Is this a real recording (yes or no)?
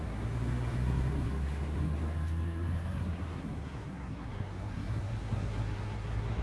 no